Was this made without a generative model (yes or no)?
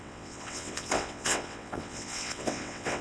no